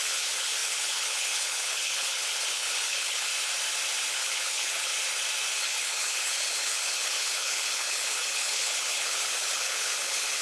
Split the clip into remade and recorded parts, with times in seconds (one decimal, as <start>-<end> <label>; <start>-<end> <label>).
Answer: 0.0-3.3 remade; 3.3-4.1 recorded; 4.1-4.9 remade; 4.9-5.6 recorded; 5.6-10.4 remade